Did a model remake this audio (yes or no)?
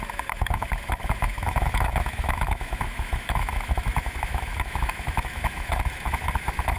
yes